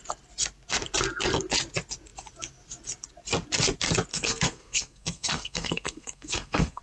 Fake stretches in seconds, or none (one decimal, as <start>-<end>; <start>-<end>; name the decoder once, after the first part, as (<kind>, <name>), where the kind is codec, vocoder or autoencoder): 4.1-6.8 (codec, SNAC)